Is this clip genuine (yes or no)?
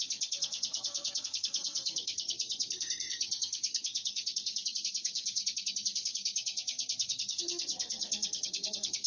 no